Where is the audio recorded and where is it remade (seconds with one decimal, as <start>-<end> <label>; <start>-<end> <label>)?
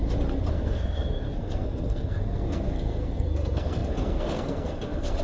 0.0-0.5 recorded; 0.5-5.2 remade